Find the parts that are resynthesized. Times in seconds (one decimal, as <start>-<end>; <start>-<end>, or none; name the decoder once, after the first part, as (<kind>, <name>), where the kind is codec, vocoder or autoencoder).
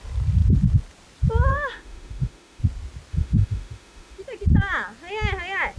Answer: 1.5-2.6 (autoencoder, DAC-VAE); 3.1-4.2